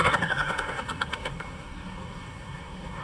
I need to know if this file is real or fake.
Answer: fake